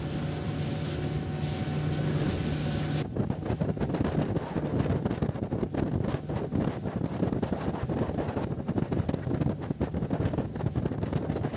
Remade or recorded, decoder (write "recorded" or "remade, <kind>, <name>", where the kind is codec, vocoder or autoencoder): recorded